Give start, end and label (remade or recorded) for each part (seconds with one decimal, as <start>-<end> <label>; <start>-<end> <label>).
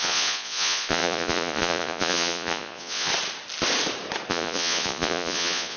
0.0-3.1 remade; 3.1-4.3 recorded; 4.3-5.8 remade